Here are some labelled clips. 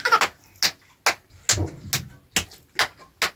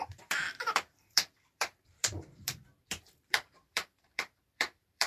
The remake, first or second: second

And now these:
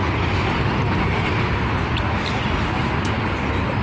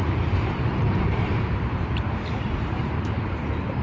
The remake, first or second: second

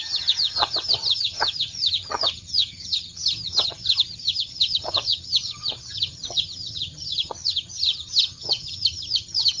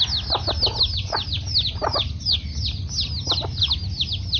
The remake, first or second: first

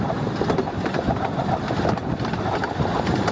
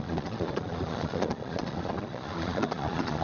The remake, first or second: second